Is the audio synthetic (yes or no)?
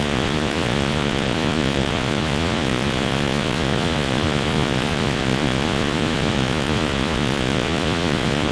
yes